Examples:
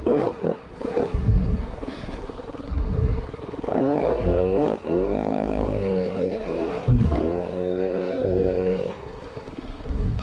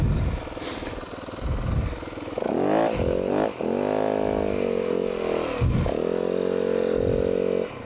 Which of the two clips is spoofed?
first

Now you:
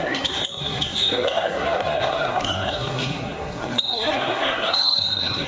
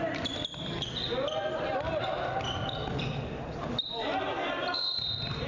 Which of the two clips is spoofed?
first